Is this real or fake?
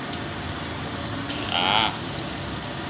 real